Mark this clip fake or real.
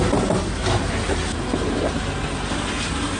real